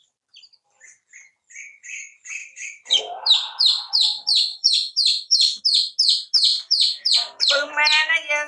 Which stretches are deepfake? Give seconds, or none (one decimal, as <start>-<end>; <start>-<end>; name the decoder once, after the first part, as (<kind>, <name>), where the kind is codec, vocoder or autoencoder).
2.4-3.0 (vocoder, BigVGAN v2); 4.5-5.6; 6.5-7.1